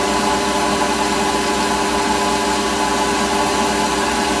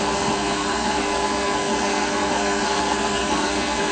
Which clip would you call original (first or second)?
first